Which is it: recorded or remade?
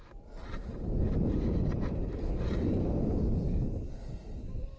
recorded